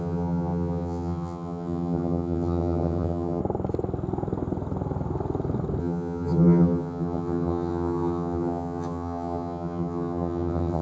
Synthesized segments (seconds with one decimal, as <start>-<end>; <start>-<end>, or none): 0.0-3.4; 5.8-10.8